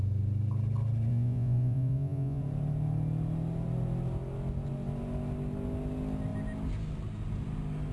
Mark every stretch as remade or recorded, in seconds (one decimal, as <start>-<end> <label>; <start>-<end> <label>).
0.0-1.1 recorded; 1.1-2.4 remade; 2.4-7.9 recorded